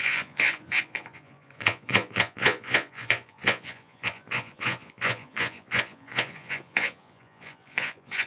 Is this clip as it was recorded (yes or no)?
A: no